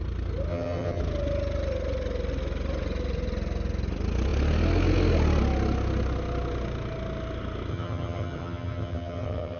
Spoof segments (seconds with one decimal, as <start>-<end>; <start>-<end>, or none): 0.5-1.0; 7.7-9.6